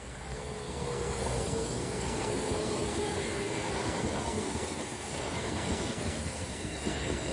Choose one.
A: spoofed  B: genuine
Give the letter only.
A